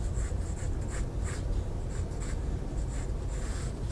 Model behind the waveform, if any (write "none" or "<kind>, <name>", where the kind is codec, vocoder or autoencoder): none